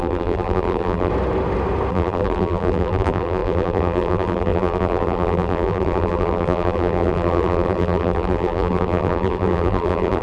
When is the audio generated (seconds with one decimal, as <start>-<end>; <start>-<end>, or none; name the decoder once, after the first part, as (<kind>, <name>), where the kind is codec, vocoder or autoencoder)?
0.0-1.1 (vocoder, BigVGAN v2); 1.9-10.2